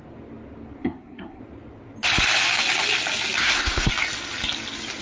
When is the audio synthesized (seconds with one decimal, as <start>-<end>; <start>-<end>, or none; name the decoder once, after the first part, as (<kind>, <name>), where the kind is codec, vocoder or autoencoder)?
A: 0.8-1.4 (codec, SNAC); 3.4-3.9